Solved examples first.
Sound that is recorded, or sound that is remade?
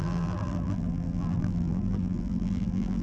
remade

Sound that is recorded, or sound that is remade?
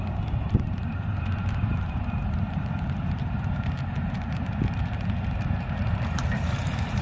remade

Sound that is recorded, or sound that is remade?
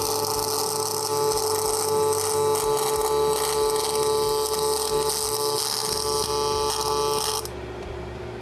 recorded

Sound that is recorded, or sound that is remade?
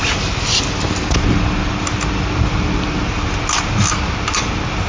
recorded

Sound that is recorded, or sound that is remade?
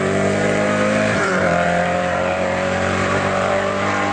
remade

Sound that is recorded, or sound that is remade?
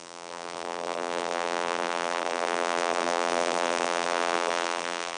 remade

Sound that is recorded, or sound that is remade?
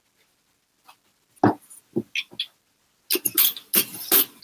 recorded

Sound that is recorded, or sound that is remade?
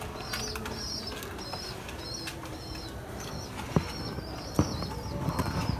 recorded